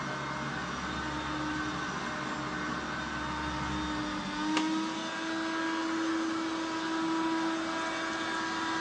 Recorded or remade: recorded